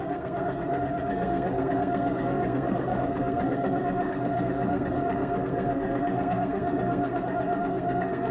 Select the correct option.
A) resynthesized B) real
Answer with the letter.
A